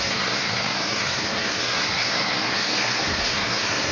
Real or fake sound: fake